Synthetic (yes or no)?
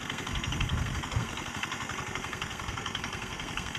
yes